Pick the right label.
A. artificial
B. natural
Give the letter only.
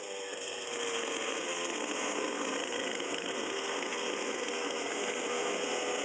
A